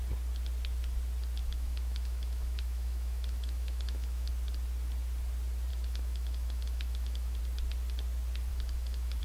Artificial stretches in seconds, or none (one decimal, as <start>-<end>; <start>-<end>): 1.4-4.3; 5.7-7.4; 8.5-9.2